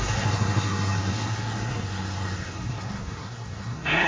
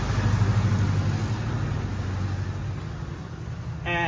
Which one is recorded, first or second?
second